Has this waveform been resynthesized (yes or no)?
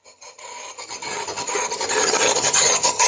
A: yes